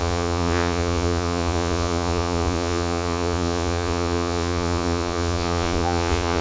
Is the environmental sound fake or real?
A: fake